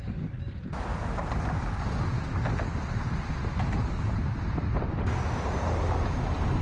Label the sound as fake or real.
real